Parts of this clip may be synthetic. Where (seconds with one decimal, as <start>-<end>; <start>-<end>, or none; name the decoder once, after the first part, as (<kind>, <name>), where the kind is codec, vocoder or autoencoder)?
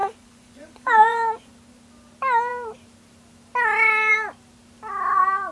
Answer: 0.0-1.5 (vocoder, Vocos)